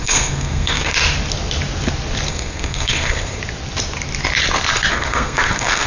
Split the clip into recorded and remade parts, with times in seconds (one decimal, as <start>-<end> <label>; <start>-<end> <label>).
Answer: 0.0-0.9 remade; 0.9-2.3 recorded; 2.3-3.4 remade; 3.4-4.9 recorded; 4.9-5.9 remade